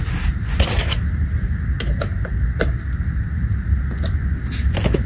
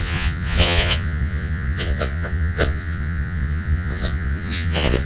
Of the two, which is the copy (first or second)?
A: second